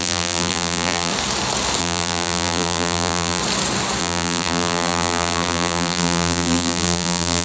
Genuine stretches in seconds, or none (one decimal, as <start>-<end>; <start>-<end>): 1.1-1.8; 3.4-4.0